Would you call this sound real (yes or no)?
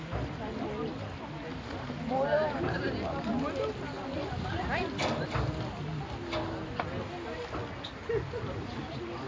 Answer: yes